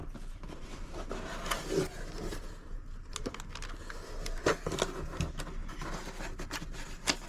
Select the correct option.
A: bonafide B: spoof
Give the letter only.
A